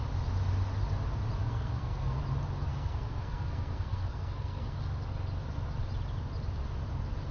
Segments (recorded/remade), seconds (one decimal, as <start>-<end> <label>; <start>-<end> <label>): 0.0-1.4 recorded; 1.4-2.2 remade; 2.2-2.7 recorded; 2.7-4.8 remade; 4.8-7.3 recorded